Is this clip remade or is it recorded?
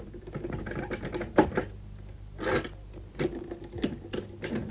recorded